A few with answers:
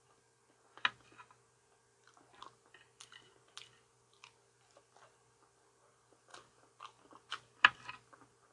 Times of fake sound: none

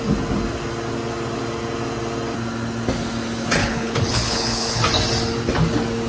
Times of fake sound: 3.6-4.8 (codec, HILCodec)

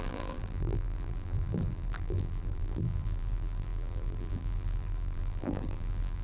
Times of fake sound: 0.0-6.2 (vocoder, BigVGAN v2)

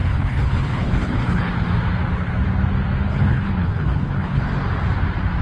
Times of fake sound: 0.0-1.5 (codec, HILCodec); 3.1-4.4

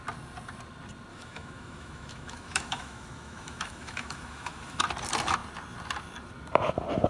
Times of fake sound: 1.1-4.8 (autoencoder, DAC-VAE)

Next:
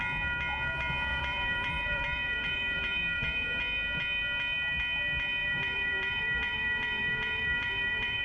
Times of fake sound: 1.1-3.6 (vocoder, BigVGAN v2); 5.4-8.2

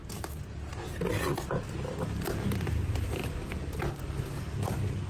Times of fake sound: none

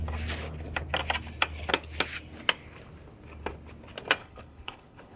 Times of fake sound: 4.2-5.2 (codec, HILCodec)